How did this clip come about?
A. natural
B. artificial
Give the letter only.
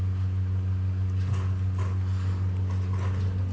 A